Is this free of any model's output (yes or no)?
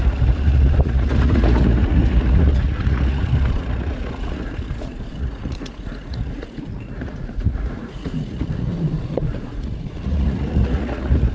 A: no